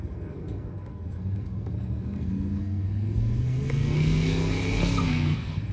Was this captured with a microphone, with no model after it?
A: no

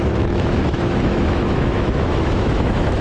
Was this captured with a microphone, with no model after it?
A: no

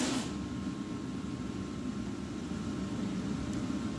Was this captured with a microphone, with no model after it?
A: no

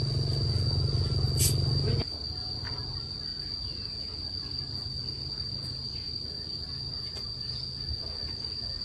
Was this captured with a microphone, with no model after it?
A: yes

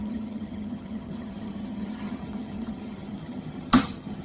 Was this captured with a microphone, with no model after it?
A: no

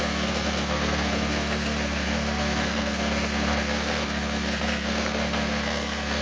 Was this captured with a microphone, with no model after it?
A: no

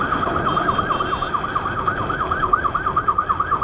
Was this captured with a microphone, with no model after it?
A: yes